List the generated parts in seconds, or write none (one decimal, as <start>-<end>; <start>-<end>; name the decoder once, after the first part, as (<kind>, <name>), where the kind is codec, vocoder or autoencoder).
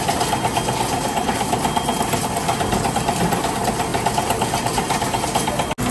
3.9-5.2 (vocoder, BigVGAN v2)